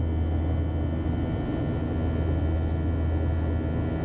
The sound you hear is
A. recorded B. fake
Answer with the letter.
A